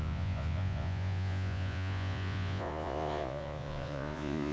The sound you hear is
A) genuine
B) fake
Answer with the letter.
B